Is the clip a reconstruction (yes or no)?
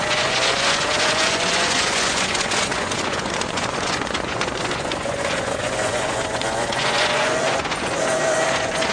yes